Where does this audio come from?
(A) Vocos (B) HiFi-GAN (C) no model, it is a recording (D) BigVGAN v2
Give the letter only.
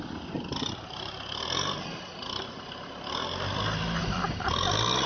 C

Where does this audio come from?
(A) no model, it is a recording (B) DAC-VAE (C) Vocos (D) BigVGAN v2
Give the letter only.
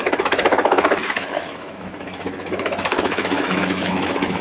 B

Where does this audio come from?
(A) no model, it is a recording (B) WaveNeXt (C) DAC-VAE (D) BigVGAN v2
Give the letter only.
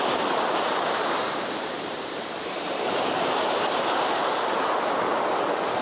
D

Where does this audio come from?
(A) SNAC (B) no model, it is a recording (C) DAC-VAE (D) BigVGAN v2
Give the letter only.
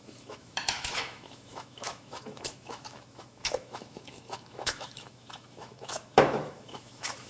C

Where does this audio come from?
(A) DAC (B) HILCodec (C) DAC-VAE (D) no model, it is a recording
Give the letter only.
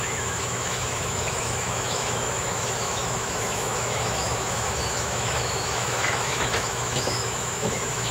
C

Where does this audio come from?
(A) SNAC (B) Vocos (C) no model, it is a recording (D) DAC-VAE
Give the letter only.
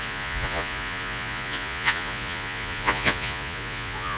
B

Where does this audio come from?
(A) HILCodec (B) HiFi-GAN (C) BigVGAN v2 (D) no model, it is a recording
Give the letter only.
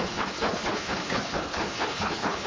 A